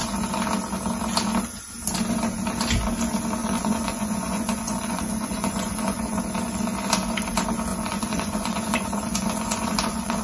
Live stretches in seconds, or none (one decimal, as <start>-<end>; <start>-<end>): 0.0-3.4; 6.2-7.7

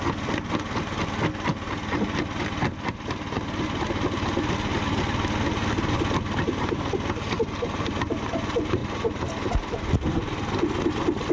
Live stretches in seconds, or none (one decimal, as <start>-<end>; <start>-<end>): 0.0-11.3

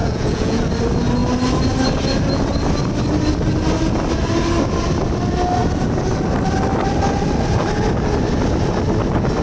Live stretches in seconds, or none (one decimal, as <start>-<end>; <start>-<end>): 0.6-9.4

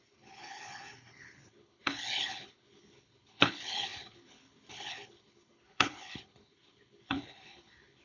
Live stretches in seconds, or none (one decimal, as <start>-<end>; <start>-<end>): none

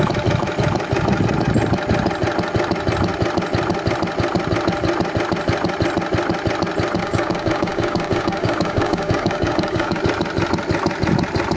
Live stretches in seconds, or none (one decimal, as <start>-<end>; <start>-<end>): 0.0-7.0; 10.0-11.6